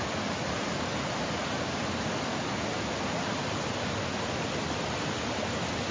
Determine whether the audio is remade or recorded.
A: recorded